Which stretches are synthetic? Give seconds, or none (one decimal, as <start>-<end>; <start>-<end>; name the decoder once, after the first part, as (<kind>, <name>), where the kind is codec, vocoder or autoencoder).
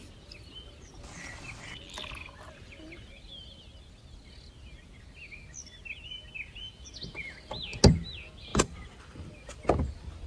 8.5-10.3 (vocoder, BigVGAN v2)